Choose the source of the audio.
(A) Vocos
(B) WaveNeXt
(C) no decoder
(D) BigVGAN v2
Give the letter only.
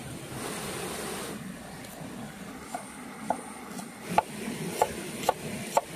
C